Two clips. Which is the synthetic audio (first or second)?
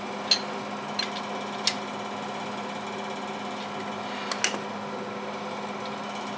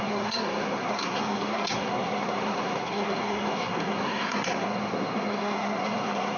second